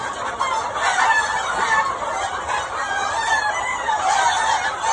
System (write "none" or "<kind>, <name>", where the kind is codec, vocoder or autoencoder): none